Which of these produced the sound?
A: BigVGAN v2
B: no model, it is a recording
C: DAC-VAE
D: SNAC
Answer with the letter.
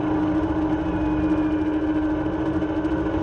B